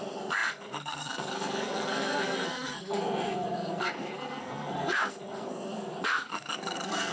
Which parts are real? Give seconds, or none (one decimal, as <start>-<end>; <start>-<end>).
none

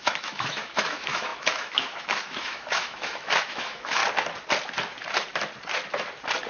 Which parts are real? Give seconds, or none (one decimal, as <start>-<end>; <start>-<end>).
4.0-6.5

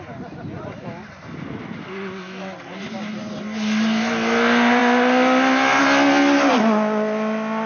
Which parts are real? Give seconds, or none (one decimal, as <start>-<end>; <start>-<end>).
0.0-7.7

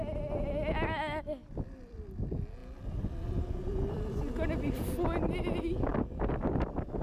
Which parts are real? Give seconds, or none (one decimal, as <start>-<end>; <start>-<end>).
0.0-7.0

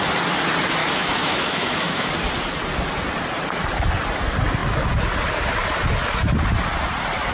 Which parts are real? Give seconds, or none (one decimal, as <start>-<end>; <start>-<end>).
0.0-0.8; 2.1-7.3